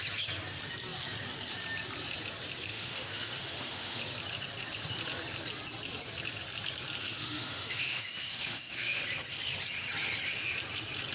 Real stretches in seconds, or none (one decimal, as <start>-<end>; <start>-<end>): 0.0-2.7; 4.0-7.0; 9.0-11.1